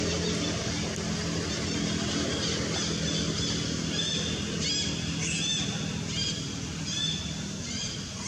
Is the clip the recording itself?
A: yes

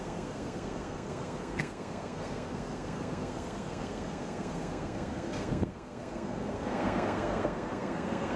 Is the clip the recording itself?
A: no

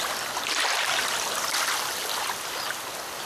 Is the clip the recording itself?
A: yes